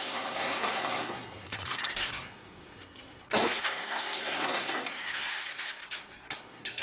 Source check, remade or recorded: remade